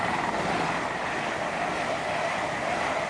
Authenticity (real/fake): real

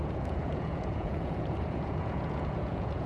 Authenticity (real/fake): fake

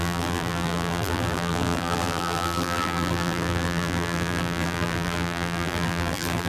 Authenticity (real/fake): fake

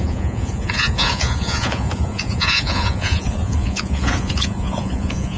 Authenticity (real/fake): fake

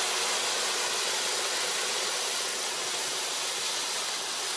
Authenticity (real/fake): real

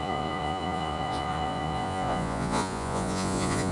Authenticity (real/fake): fake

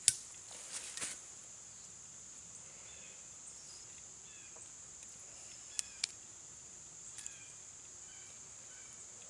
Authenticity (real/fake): real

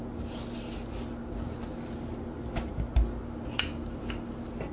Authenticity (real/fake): real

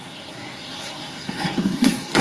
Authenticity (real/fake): fake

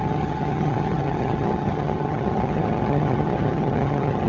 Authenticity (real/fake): fake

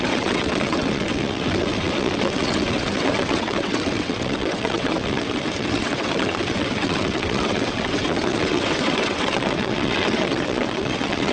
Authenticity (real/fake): fake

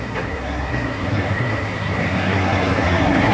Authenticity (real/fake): fake